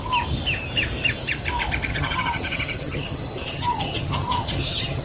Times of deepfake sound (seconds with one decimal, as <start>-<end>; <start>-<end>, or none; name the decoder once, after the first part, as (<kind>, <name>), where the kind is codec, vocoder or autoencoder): 1.9-5.0 (vocoder, HiFi-GAN)